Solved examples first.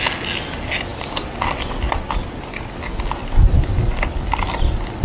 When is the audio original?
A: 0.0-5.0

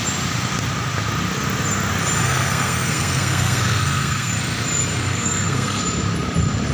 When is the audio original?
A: 0.0-2.2; 4.3-5.0; 5.8-6.7

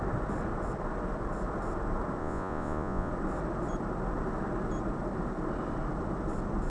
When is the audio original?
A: 0.0-2.2; 3.1-6.7

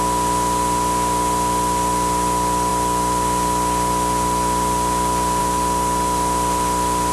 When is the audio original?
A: 0.0-7.1